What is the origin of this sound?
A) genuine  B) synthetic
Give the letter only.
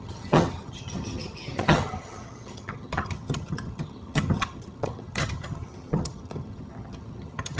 B